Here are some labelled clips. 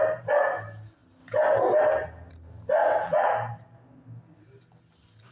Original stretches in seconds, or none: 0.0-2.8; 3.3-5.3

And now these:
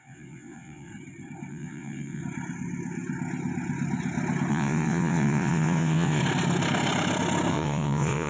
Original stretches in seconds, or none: 0.9-1.5; 2.2-4.5; 6.2-7.5